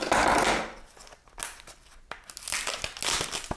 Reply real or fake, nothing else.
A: real